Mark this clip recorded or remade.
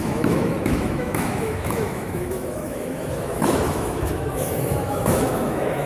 remade